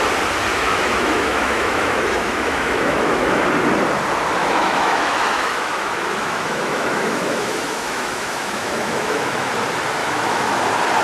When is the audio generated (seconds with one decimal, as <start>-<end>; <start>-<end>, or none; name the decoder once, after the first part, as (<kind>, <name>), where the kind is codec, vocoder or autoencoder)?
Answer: 0.5-3.4 (autoencoder, DAC-VAE); 4.4-9.5; 10.0-10.6